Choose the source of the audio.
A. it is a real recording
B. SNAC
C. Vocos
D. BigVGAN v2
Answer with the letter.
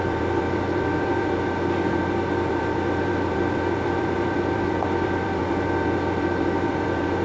D